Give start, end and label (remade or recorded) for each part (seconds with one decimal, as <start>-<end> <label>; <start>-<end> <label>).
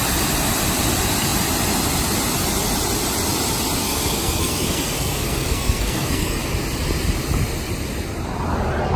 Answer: 0.0-3.8 recorded; 3.8-6.4 remade; 6.4-9.0 recorded